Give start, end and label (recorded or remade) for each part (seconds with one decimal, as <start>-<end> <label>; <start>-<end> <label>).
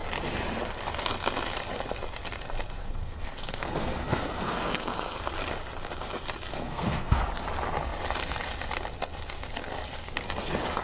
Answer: 0.0-2.8 recorded; 2.8-5.2 remade; 5.2-6.5 recorded; 6.5-7.2 remade; 7.2-10.8 recorded